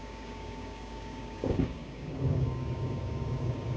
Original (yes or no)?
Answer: no